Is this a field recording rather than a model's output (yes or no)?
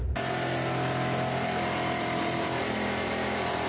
no